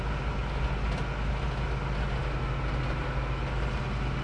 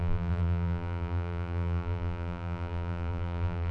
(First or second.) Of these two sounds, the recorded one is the first